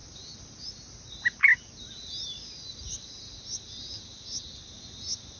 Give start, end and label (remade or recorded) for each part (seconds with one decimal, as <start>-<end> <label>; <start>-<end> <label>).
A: 0.0-5.4 recorded